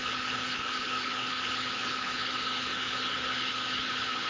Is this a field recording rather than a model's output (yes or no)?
no